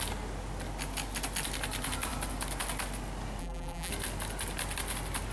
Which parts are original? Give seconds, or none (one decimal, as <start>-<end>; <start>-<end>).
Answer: 0.0-3.4; 3.9-5.3